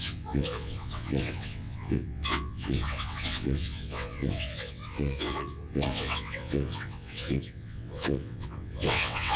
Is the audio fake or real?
fake